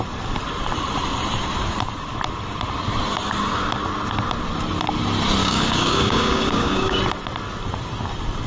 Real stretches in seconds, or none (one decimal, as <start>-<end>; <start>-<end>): 0.0-5.4; 7.0-8.5

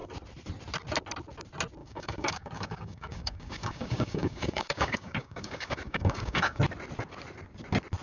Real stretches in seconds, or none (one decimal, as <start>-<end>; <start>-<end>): 0.0-1.8; 6.6-8.0

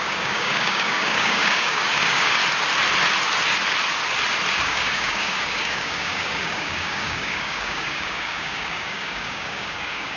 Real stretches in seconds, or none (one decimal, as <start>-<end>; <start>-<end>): 2.4-4.5

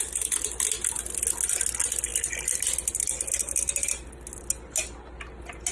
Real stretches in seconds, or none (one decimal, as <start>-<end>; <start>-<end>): 0.0-5.7